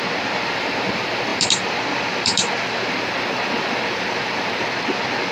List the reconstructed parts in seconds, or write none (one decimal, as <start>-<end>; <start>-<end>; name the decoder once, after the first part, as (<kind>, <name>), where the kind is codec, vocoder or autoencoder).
1.3-2.9 (vocoder, BigVGAN v2)